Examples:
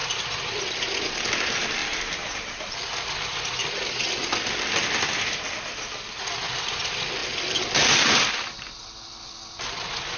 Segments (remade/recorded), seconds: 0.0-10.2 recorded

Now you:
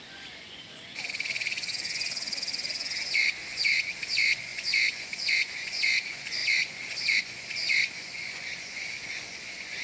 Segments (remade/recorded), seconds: 0.0-9.8 remade